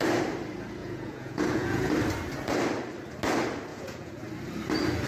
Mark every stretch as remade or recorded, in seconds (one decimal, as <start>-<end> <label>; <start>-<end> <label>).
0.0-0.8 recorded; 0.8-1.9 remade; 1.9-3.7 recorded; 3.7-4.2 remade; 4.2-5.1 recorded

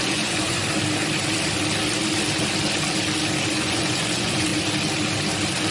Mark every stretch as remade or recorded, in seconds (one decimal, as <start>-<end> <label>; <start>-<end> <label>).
0.0-0.6 remade; 0.6-3.5 recorded; 3.5-4.5 remade; 4.5-5.7 recorded

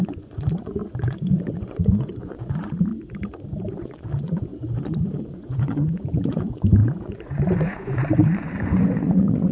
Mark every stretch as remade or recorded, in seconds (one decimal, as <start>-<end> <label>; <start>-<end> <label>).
0.0-2.9 remade; 2.9-3.7 recorded; 3.7-9.5 remade

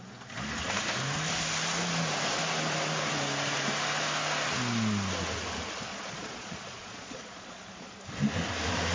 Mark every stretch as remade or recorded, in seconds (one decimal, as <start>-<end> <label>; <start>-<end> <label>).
0.0-5.9 recorded; 5.9-7.9 remade; 7.9-8.9 recorded

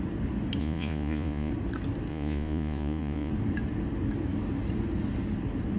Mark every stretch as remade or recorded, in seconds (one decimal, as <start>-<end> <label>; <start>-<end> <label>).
0.0-0.6 recorded; 0.6-1.5 remade; 1.5-2.1 recorded; 2.1-3.3 remade; 3.3-5.8 recorded

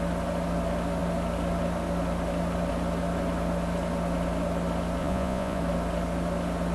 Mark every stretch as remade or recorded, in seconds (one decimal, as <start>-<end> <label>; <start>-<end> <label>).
0.0-5.0 recorded; 5.0-5.6 remade; 5.6-6.7 recorded

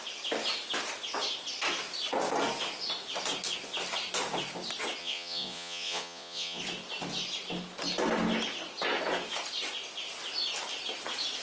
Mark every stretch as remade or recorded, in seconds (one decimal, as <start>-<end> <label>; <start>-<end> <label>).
0.0-5.0 recorded; 5.0-6.6 remade; 6.6-11.4 recorded